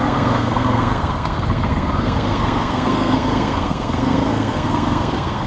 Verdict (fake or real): fake